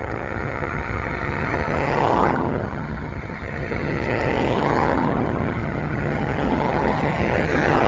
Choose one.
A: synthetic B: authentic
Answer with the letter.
A